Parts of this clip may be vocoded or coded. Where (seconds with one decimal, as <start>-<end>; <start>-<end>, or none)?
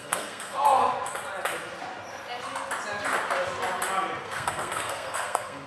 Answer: 0.0-0.8; 4.2-5.7